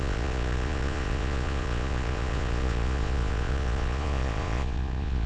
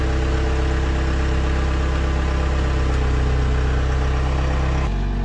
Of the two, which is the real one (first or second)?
second